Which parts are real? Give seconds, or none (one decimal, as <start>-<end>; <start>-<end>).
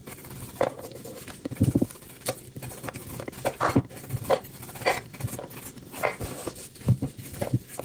5.4-6.3